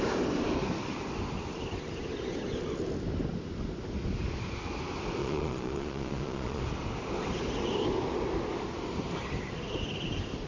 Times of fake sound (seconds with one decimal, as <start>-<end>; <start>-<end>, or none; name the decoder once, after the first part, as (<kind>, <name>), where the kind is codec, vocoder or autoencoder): 5.2-6.6 (vocoder, Vocos)